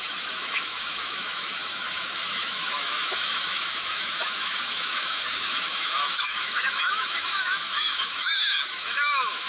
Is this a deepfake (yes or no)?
yes